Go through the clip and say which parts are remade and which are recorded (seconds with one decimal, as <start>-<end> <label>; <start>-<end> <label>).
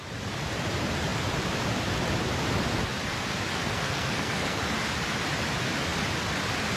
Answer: 0.0-3.5 recorded; 3.5-4.6 remade; 4.6-6.8 recorded